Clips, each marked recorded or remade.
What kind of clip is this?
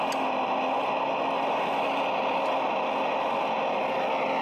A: recorded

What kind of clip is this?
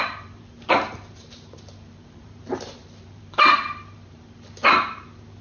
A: remade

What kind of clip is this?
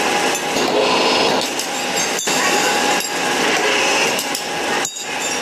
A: recorded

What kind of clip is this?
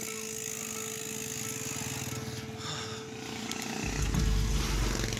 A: recorded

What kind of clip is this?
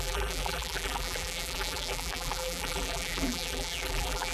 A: remade